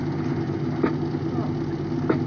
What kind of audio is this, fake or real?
real